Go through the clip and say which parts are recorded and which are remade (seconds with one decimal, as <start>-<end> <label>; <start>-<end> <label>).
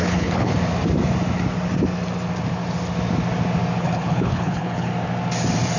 0.0-0.5 remade; 0.5-3.8 recorded; 3.8-4.9 remade; 4.9-5.8 recorded